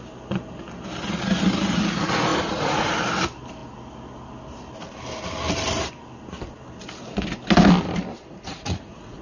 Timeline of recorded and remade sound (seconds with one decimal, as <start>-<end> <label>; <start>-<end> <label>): 0.0-2.3 recorded; 2.3-2.9 remade; 2.9-8.2 recorded; 8.2-9.2 remade